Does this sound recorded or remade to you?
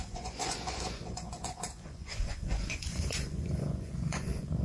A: remade